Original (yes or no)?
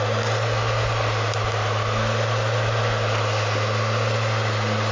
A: yes